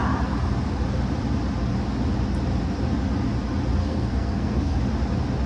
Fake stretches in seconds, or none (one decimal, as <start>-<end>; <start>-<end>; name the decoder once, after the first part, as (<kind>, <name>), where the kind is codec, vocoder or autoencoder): 3.8-4.8 (codec, SNAC)